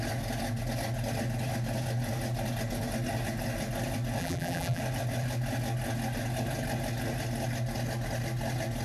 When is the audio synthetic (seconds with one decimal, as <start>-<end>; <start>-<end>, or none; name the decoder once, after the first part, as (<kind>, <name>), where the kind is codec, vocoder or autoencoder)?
4.2-4.8 (vocoder, BigVGAN v2)